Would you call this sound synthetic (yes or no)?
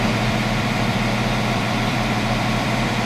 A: yes